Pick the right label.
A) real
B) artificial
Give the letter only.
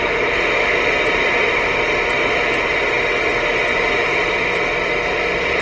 A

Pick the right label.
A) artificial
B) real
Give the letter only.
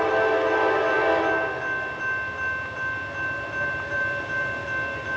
B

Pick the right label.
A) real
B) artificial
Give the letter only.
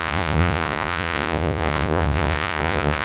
B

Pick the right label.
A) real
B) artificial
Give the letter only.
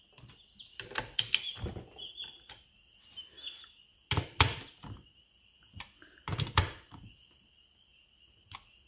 A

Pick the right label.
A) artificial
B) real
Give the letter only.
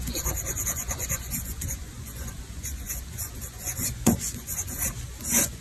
A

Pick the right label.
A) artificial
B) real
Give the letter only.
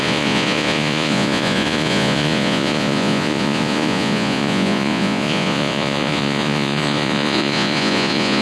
A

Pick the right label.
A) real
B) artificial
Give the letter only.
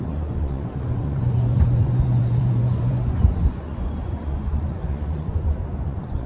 B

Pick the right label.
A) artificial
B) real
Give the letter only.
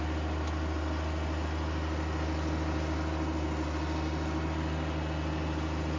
B